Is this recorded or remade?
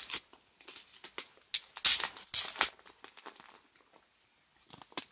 recorded